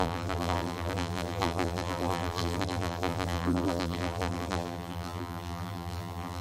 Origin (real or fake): fake